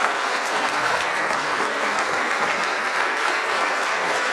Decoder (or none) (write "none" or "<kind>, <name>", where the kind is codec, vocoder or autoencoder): codec, SNAC